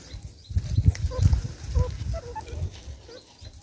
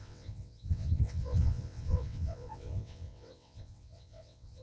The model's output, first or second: second